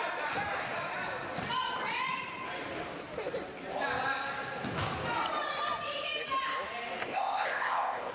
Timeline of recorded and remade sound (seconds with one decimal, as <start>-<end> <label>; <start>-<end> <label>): 0.0-7.0 recorded; 7.0-8.1 remade